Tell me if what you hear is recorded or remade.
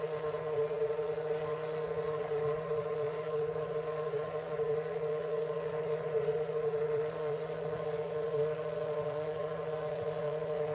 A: remade